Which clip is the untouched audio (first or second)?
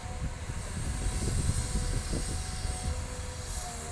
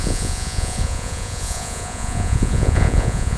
first